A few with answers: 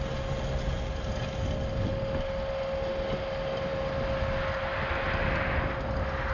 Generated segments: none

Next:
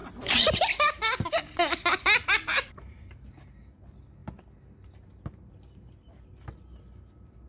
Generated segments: 0.0-3.3 (vocoder, BigVGAN v2)

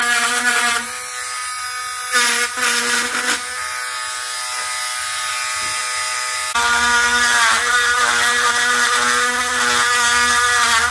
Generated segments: none

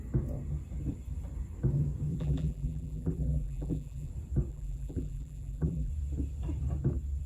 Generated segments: 2.1-4.1 (vocoder, BigVGAN v2); 4.5-5.9

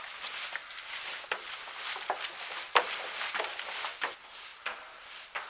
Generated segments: none

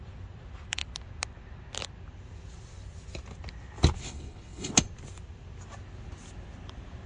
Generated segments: 4.0-4.7 (codec, HILCodec)